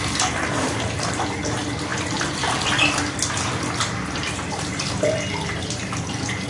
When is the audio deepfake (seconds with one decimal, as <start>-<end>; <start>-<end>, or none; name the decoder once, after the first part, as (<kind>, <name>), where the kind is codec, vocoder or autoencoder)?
none